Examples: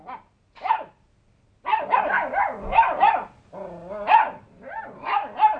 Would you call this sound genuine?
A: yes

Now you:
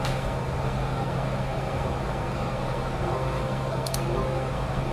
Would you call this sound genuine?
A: no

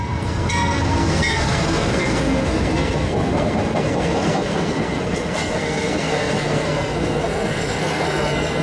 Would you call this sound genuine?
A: no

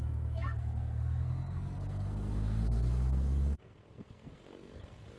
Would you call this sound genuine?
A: no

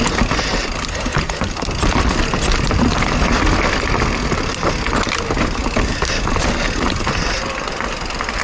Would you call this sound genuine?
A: yes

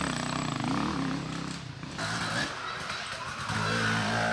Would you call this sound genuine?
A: yes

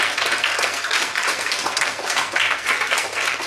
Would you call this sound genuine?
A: no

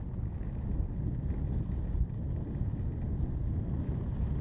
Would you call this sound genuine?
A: yes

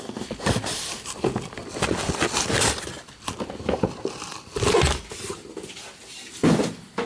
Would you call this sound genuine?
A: yes